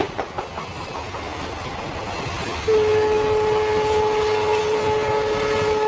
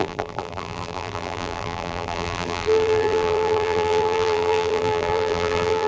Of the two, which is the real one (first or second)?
first